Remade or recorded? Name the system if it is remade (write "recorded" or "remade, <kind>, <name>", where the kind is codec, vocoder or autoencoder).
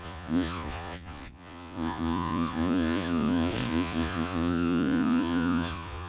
remade, vocoder, Vocos